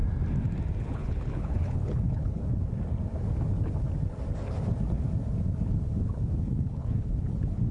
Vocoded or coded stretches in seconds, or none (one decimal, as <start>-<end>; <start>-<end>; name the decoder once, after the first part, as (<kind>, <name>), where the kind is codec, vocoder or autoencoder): 0.8-2.4 (codec, HILCodec); 6.4-7.7